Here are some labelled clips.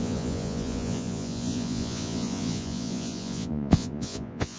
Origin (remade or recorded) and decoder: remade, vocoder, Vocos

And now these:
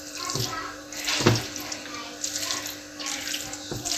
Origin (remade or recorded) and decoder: recorded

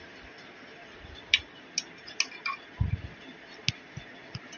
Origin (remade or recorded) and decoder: recorded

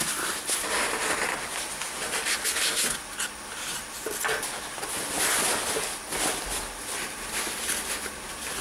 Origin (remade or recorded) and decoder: recorded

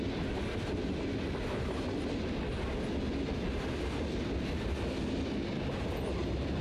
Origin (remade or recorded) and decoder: recorded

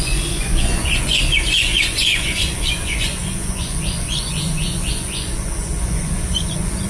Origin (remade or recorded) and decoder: remade, vocoder, Vocos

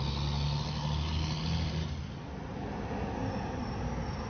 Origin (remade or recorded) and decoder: recorded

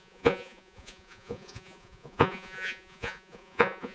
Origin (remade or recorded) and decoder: remade, vocoder, Vocos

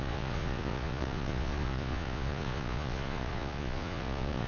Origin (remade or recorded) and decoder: remade, vocoder, Vocos